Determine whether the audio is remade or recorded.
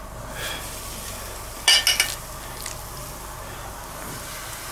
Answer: recorded